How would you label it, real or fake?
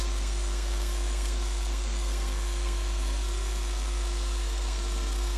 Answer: fake